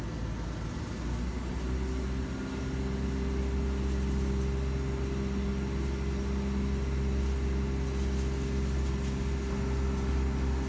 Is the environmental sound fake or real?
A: real